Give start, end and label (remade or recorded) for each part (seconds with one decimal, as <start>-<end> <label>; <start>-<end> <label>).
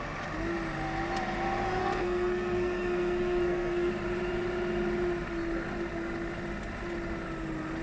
0.0-1.8 recorded; 1.8-3.9 remade; 3.9-7.8 recorded